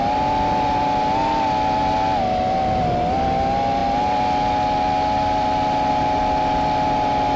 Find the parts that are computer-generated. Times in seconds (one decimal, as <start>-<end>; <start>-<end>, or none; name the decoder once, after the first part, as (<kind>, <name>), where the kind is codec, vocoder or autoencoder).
none